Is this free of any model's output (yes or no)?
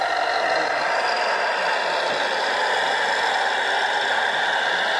yes